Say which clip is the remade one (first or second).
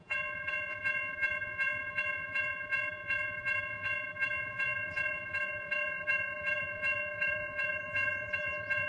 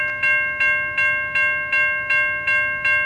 first